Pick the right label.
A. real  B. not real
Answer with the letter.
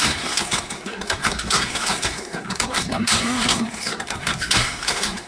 B